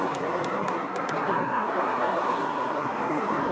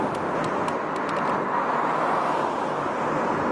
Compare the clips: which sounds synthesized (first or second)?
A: first